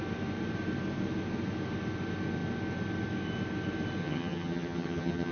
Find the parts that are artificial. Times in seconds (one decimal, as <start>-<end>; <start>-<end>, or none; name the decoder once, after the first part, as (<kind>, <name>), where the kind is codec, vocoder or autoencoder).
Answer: 4.0-5.3 (vocoder, HiFi-GAN)